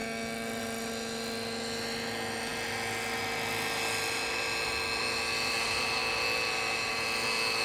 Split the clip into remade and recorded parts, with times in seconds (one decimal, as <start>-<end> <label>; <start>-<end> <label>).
0.0-7.6 recorded